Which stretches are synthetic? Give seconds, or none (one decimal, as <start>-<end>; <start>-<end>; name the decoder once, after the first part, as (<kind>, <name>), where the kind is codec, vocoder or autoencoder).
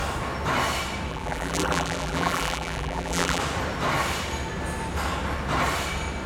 1.1-3.4 (vocoder, BigVGAN v2)